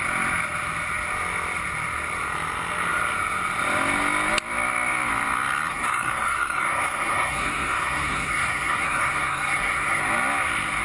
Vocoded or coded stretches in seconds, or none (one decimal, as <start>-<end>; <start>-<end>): 5.7-10.0